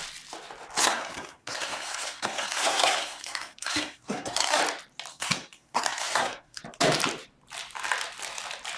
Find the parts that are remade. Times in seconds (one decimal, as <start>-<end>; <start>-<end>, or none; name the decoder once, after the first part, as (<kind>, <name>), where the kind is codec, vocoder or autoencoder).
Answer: 0.8-4.6 (codec, SNAC); 5.1-6.6